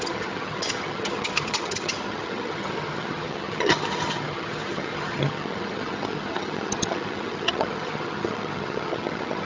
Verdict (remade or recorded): remade